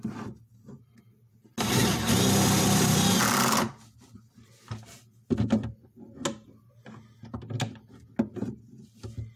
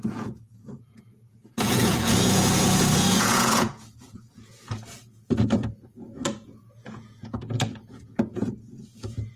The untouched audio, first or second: first